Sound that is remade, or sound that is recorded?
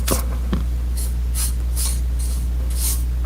recorded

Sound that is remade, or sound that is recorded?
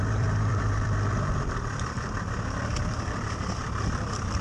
remade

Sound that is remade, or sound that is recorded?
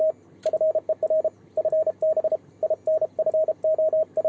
recorded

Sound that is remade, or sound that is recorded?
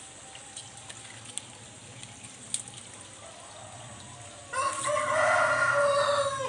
recorded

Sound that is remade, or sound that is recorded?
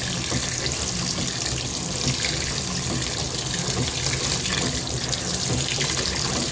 recorded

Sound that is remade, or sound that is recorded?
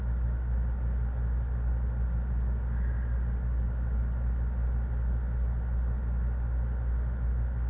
recorded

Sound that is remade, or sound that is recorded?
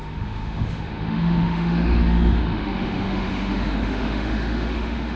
remade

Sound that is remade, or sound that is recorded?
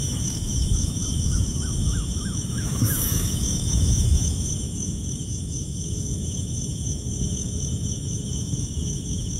remade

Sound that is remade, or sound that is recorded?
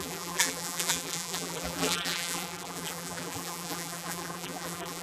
remade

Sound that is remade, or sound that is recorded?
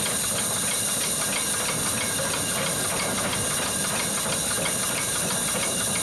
recorded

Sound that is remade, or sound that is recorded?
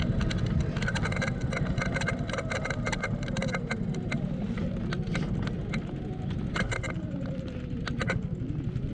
recorded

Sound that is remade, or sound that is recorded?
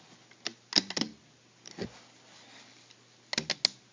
recorded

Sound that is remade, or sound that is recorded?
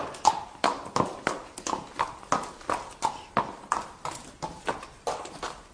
recorded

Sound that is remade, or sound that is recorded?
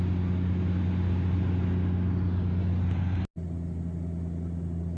recorded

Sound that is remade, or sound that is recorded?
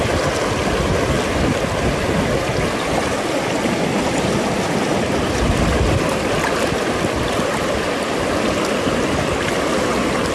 recorded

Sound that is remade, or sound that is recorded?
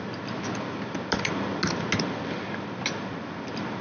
recorded